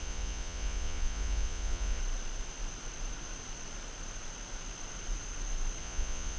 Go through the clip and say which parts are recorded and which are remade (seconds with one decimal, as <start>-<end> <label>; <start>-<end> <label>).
0.0-2.0 remade; 2.0-5.8 recorded; 5.8-6.4 remade